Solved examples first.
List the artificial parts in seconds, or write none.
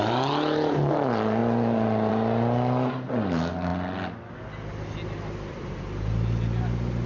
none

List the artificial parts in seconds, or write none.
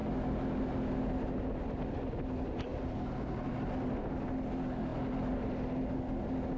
none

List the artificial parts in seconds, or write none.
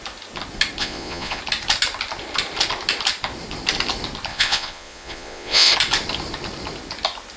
0.8-1.4 (vocoder, Vocos); 4.3-5.7